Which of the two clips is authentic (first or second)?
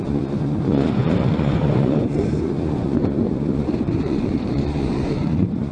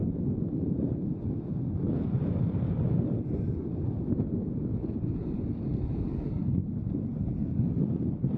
second